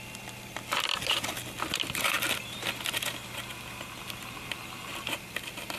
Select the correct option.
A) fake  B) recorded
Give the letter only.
B